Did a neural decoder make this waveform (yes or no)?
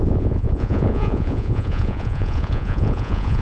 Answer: yes